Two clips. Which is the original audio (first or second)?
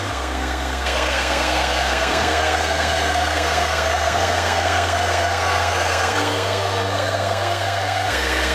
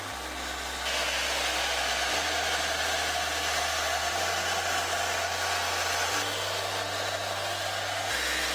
second